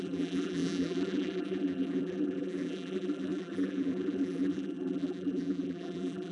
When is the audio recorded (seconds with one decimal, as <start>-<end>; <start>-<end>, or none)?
none